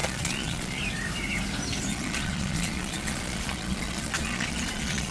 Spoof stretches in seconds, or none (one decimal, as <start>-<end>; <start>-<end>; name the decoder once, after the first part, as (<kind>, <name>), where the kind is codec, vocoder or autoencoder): 0.0-0.8 (vocoder, Vocos); 1.9-5.1